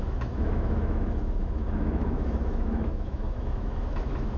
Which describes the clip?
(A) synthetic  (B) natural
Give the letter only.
A